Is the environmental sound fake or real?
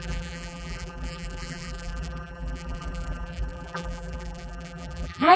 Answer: fake